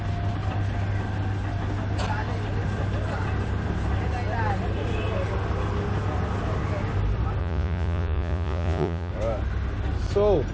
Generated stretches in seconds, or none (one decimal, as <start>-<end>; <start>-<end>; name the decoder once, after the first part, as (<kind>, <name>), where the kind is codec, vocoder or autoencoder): 7.4-9.1 (vocoder, Vocos)